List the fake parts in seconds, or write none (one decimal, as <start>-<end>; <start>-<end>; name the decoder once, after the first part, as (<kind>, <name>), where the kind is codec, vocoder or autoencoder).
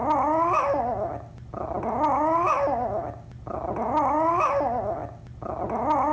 none